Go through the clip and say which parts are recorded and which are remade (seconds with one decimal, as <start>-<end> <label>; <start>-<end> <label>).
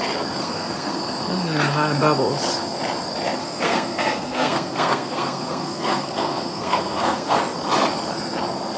0.0-0.4 recorded; 0.4-1.0 remade; 1.0-3.4 recorded; 3.4-7.4 remade; 7.4-8.8 recorded